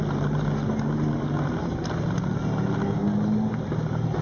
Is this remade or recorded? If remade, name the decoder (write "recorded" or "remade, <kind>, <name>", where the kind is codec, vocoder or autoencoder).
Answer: recorded